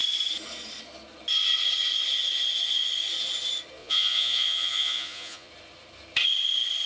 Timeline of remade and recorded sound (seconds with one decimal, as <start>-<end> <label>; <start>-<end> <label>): 0.0-3.8 recorded; 3.8-5.5 remade; 5.5-6.9 recorded